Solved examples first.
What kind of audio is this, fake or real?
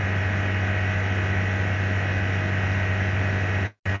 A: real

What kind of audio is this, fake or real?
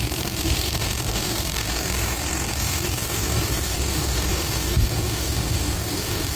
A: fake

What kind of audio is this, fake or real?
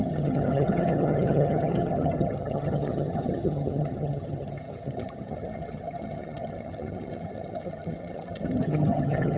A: fake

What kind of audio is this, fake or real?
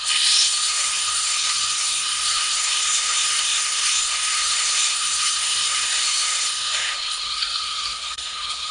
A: fake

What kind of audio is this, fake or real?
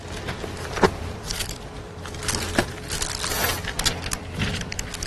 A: real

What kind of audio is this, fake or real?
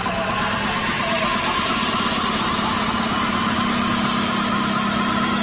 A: real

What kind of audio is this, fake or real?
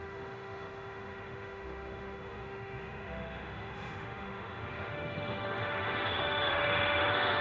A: fake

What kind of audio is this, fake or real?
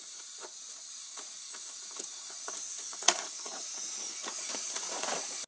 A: fake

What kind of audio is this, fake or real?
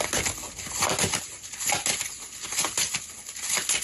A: real